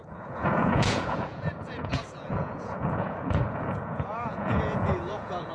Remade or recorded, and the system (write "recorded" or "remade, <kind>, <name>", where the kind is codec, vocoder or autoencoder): remade, vocoder, Vocos